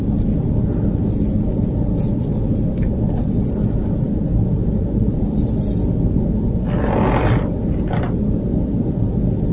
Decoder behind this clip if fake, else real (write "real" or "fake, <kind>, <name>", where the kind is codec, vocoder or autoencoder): real